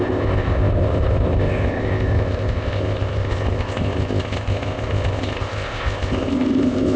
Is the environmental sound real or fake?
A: fake